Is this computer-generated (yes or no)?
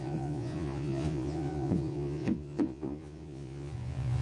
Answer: yes